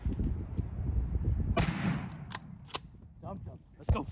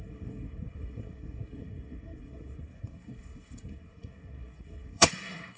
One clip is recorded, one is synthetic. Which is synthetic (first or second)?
second